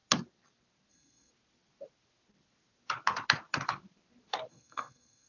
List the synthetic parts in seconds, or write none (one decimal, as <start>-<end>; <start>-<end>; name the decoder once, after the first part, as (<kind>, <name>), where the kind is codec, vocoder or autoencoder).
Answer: 0.9-1.3 (codec, SNAC); 4.5-5.3